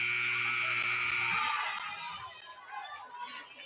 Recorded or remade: recorded